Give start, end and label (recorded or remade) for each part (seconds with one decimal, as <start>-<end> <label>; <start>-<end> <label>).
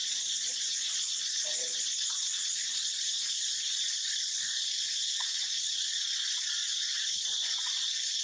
0.0-4.7 remade; 4.7-5.2 recorded; 5.2-8.2 remade